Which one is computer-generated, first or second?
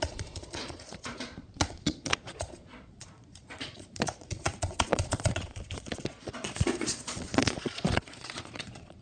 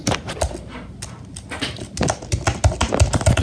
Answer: first